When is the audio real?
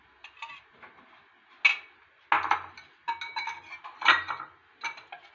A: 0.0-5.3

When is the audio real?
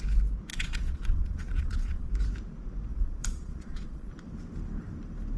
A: 0.0-0.5; 2.1-2.9; 4.1-5.4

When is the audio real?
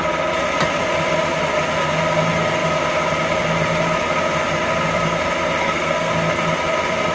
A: 0.0-5.6; 6.1-7.1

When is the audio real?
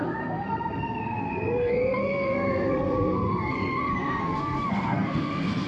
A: none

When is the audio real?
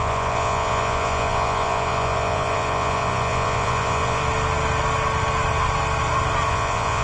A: 4.2-6.5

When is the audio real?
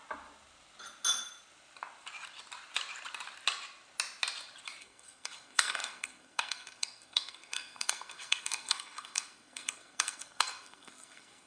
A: 0.0-4.8